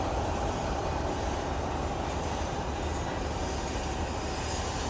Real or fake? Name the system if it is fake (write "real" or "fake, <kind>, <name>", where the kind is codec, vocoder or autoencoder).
real